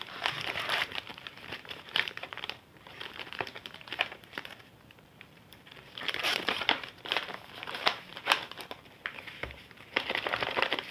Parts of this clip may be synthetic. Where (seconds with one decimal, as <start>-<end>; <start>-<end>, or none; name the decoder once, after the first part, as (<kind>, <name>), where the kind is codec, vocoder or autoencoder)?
0.0-10.9 (vocoder, BigVGAN v2)